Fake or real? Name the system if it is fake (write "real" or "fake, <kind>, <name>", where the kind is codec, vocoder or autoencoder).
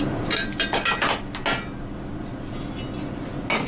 real